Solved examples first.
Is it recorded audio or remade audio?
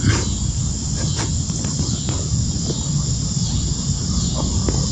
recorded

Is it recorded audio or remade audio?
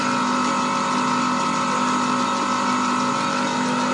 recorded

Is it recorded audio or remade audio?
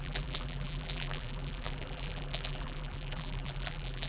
remade